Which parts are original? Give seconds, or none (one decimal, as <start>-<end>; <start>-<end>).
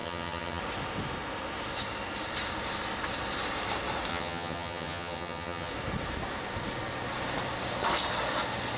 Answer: 0.6-4.1; 5.7-8.8